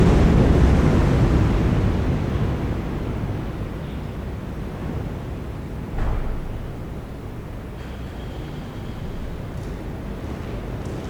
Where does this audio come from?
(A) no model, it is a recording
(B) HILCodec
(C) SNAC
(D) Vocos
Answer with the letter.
A